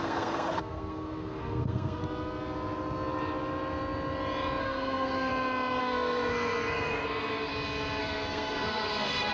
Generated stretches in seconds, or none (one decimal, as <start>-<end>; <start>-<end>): 0.0-2.0; 4.6-5.3; 5.8-7.5; 8.0-9.3